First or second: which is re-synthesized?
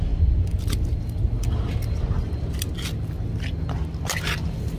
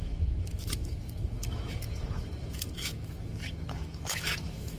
second